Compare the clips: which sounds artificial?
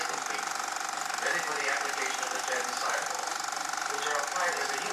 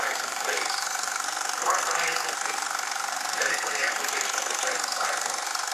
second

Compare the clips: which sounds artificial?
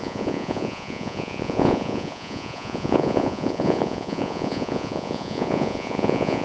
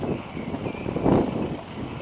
first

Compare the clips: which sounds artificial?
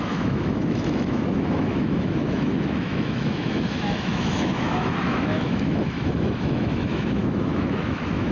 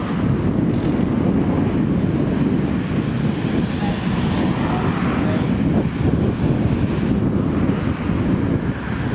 first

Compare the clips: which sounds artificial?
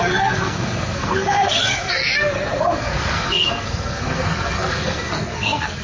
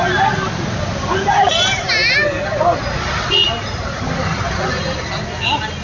first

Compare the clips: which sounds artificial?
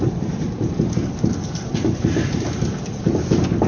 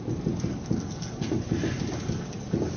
first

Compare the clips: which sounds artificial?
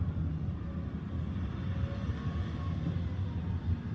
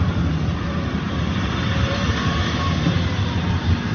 second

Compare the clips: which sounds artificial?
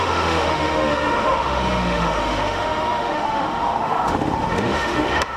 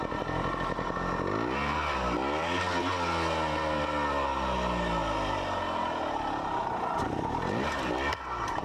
first